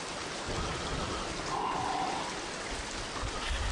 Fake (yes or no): no